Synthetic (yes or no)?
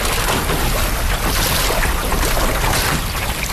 no